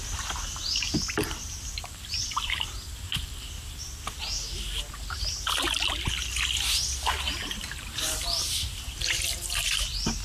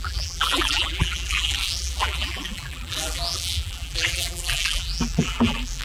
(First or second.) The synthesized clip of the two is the second